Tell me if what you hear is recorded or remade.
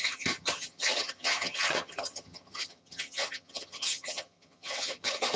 remade